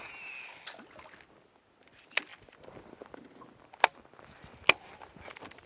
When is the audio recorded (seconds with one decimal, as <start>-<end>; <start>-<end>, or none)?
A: 0.0-5.7